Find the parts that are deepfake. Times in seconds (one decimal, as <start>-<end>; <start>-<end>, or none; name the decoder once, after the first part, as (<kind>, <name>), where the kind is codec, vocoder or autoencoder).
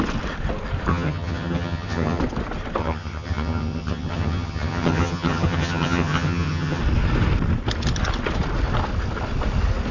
0.9-2.2 (vocoder, HiFi-GAN); 2.8-6.8